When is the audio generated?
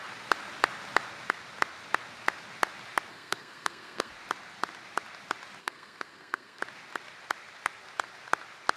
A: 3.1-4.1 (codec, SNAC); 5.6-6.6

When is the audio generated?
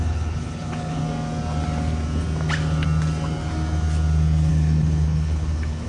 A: 0.0-1.0 (codec, HILCodec); 4.5-5.9